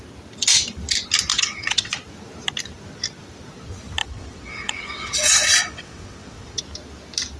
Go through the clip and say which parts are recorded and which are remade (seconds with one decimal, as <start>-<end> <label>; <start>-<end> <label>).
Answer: 0.0-1.3 recorded; 1.3-2.0 remade; 2.0-4.0 recorded; 4.0-6.6 remade; 6.6-7.4 recorded